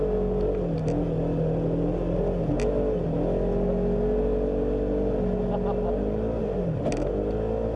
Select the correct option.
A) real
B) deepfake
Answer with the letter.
A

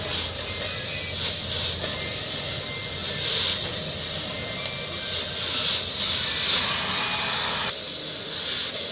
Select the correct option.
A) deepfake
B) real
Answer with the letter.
B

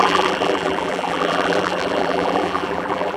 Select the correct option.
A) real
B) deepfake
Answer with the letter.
B